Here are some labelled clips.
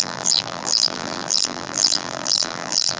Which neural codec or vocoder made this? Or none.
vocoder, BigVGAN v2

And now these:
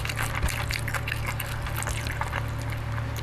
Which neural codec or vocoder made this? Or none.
none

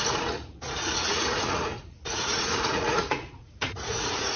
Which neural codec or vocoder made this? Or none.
vocoder, Vocos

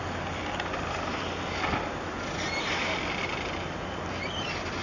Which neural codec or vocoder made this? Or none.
none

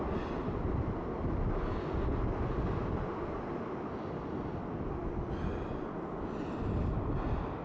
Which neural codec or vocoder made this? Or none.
none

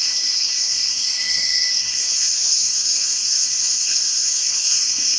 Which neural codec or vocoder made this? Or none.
codec, SNAC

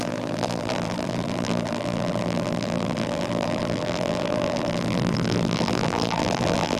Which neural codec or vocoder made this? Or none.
vocoder, BigVGAN v2